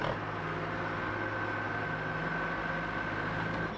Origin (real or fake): real